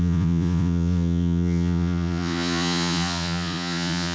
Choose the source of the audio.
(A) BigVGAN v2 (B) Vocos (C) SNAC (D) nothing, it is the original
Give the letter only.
B